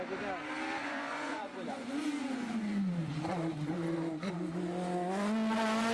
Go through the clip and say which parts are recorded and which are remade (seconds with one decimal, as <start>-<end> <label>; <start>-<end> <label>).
0.0-0.8 recorded; 0.8-4.3 remade; 4.3-5.9 recorded